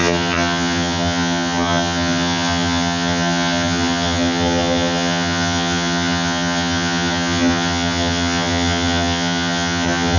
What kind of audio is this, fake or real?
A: fake